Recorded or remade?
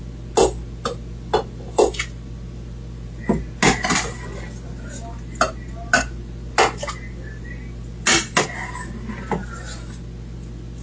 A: recorded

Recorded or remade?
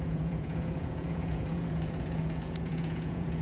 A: remade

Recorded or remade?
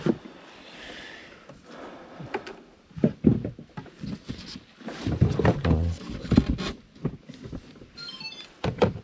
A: recorded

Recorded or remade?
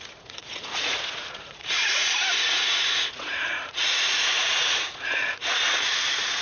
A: remade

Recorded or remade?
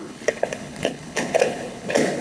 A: remade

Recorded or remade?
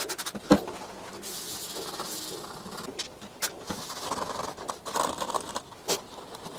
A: recorded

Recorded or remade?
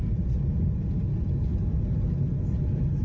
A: recorded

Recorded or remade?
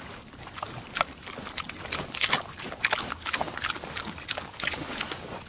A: recorded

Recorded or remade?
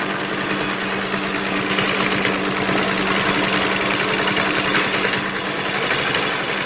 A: recorded